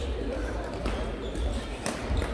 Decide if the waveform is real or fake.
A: real